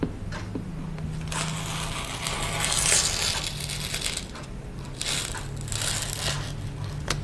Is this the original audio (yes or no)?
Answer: yes